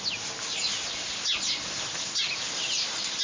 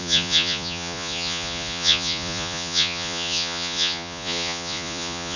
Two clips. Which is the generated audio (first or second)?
second